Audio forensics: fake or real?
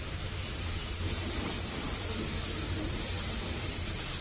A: real